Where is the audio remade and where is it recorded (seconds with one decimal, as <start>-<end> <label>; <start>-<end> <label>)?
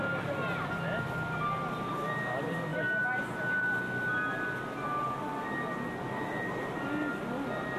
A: 0.0-7.8 recorded